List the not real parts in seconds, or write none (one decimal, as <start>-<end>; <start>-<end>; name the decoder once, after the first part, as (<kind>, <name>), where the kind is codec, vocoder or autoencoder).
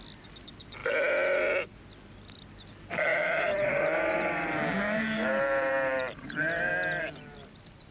3.1-6.7 (vocoder, BigVGAN v2)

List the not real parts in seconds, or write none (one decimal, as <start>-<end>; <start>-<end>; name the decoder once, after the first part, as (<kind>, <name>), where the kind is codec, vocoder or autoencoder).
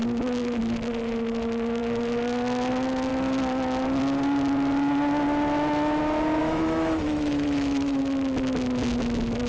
6.4-8.0 (autoencoder, DAC-VAE)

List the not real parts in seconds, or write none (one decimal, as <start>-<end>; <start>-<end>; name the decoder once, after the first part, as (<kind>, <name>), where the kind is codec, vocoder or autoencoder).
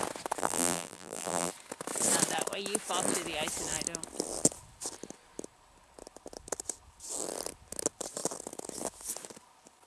0.4-1.5 (vocoder, BigVGAN v2)